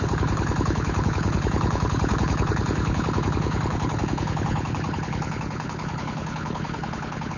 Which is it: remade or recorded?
remade